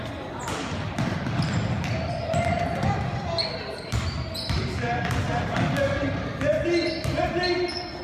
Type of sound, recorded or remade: recorded